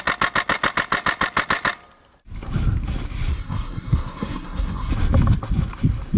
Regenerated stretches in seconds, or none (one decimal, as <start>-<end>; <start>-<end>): 3.3-4.9